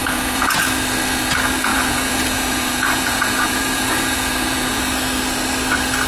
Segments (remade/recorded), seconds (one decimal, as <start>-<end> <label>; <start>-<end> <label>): 0.0-0.6 remade; 0.6-1.7 recorded; 1.7-4.9 remade; 4.9-6.1 recorded